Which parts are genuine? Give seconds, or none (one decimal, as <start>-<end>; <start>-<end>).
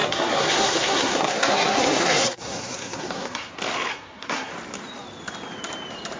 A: 3.5-3.9; 4.5-6.2